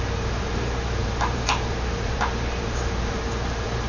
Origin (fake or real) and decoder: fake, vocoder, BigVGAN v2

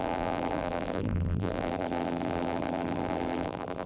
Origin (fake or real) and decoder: fake, vocoder, BigVGAN v2